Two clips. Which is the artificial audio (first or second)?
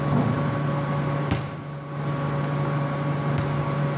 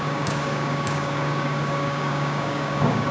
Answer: second